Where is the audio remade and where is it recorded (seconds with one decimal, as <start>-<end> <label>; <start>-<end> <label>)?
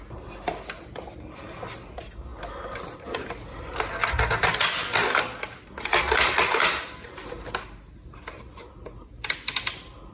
0.0-10.1 recorded